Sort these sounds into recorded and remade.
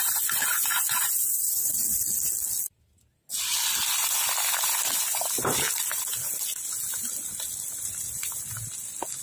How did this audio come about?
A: recorded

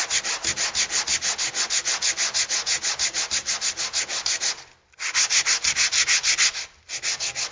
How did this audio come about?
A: recorded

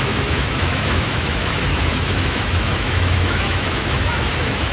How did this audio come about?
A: remade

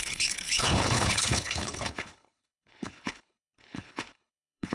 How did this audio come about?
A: remade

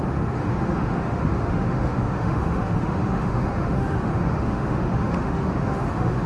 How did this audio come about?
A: remade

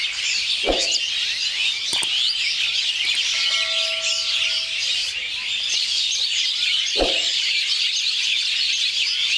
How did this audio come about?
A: recorded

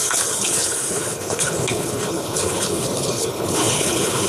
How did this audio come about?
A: remade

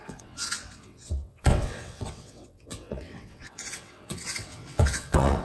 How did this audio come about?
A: remade